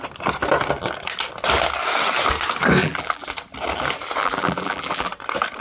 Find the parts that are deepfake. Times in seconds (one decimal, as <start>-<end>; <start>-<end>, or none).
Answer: 2.8-3.3; 4.2-5.1

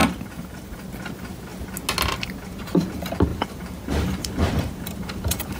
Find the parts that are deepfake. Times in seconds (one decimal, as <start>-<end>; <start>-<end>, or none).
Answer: 0.0-0.9; 3.3-5.6

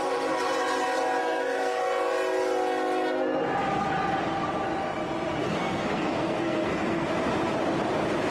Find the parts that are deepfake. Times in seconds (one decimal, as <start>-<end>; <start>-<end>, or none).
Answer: 1.2-1.8; 5.4-7.1

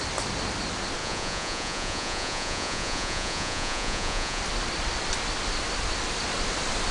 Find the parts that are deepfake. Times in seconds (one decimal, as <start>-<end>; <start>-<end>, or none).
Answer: 1.0-4.4